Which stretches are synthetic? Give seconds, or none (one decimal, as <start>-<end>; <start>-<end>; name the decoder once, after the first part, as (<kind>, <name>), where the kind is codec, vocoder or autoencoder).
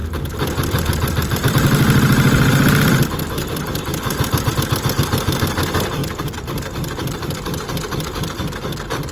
0.0-4.5 (vocoder, BigVGAN v2); 6.0-8.6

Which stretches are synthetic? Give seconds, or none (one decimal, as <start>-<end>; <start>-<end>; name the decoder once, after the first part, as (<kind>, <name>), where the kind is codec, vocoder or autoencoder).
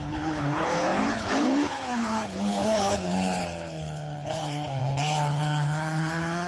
0.0-6.5 (codec, HILCodec)